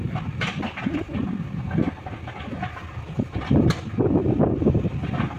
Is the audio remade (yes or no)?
no